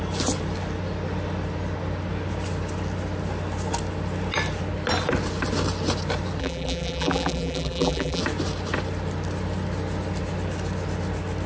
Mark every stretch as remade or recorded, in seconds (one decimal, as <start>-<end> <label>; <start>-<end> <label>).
0.0-6.4 recorded; 6.4-8.2 remade; 8.2-11.5 recorded